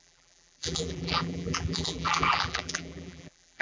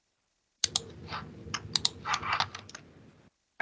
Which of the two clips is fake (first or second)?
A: first